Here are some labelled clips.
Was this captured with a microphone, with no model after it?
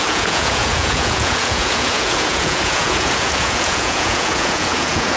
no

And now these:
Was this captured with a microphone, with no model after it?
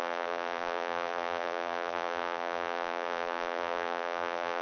no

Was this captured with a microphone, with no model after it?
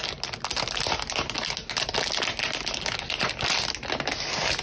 yes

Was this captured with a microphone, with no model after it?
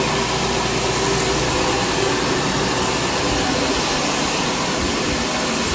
yes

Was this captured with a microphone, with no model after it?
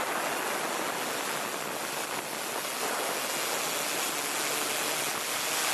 yes